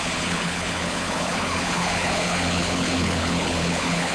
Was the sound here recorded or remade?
remade